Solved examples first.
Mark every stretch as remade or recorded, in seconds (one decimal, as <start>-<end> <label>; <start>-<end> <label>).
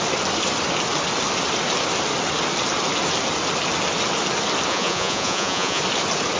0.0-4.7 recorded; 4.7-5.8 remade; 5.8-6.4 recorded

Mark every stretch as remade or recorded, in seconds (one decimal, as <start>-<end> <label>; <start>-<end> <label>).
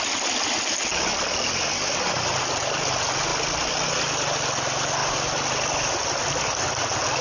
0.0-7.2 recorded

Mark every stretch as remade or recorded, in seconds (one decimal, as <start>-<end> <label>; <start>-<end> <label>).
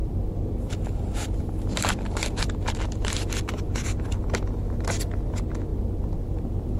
0.0-4.1 remade; 4.1-5.7 recorded; 5.7-6.8 remade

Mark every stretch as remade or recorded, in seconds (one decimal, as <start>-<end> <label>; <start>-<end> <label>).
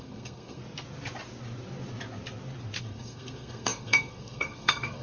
0.0-0.6 remade; 0.6-2.8 recorded; 2.8-5.0 remade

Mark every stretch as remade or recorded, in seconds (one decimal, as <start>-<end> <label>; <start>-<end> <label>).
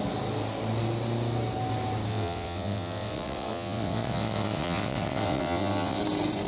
0.0-2.1 recorded; 2.1-6.0 remade; 6.0-6.5 recorded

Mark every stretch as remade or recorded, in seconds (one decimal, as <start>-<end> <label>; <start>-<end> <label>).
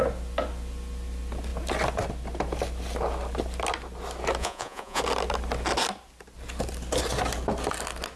0.0-4.4 recorded; 4.4-5.0 remade; 5.0-8.2 recorded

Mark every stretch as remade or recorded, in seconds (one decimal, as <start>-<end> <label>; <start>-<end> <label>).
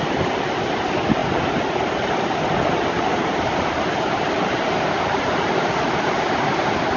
0.0-7.0 recorded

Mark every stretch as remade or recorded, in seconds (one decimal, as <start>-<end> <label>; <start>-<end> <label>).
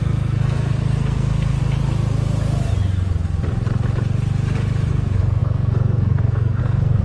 0.0-1.6 remade; 1.6-4.9 recorded; 4.9-7.0 remade